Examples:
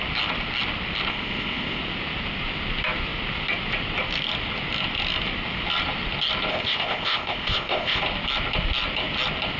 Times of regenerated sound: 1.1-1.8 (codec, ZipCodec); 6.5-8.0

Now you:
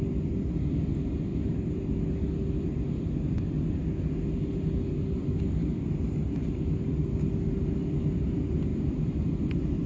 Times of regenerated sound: none

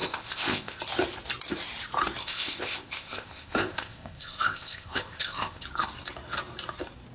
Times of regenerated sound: 0.0-0.8 (codec, ZipCodec); 2.2-5.6

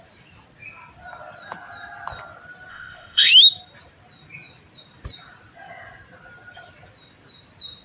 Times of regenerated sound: 2.7-3.3 (codec, ZipCodec)

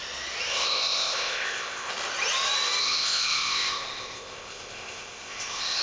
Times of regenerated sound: 0.5-1.9 (codec, ZipCodec); 2.8-5.8

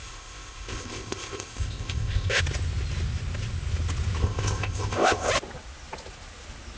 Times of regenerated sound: 0.0-2.4 (codec, ZipCodec); 4.2-5.3

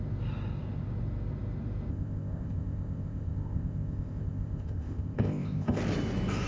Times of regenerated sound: 1.9-5.8 (codec, ZipCodec)

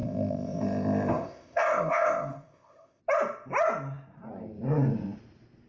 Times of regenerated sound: 0.0-3.0 (codec, ZipCodec)